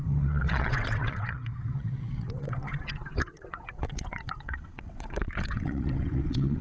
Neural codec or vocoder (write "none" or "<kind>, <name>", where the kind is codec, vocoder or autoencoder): vocoder, WaveNeXt